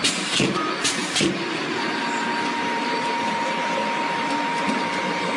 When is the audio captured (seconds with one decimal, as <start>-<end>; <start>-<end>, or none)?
none